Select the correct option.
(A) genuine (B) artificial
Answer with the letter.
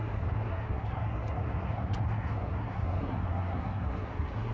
B